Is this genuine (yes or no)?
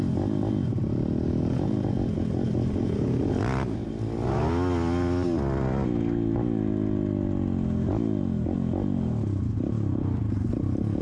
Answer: yes